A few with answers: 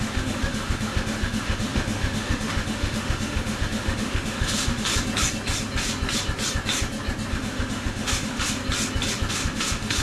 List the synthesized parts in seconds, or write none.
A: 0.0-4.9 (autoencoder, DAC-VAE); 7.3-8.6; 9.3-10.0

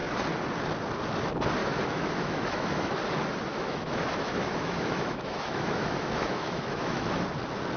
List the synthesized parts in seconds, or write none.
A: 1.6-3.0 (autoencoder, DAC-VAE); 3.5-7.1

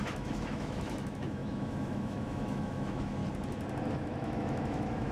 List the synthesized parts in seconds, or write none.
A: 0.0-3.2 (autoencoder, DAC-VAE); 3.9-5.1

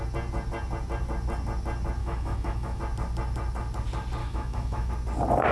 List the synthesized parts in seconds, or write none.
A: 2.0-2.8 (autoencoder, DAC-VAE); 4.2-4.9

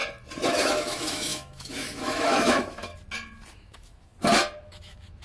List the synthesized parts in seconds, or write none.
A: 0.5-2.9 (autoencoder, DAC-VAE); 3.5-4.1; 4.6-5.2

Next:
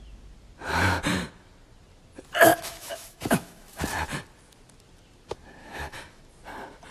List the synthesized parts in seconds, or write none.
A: 2.5-3.8 (autoencoder, DAC-VAE); 5.6-6.2

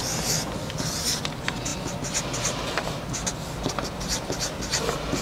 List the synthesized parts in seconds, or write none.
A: none